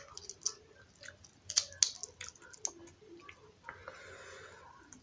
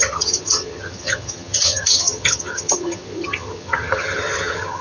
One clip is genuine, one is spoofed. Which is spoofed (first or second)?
second